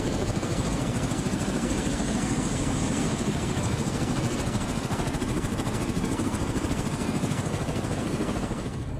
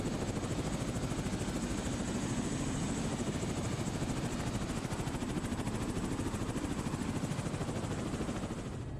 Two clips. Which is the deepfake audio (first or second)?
first